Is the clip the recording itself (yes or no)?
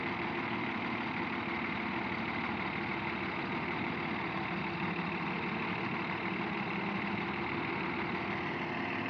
yes